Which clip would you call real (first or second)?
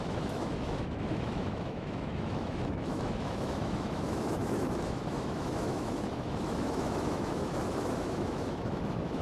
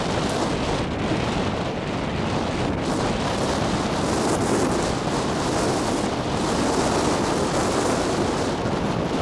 second